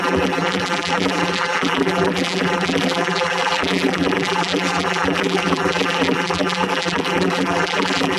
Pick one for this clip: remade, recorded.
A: remade